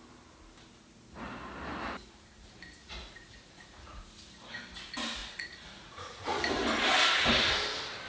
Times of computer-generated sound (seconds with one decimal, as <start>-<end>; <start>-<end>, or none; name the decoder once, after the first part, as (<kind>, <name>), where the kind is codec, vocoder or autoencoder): 2.8-4.0 (vocoder, Vocos); 5.2-6.4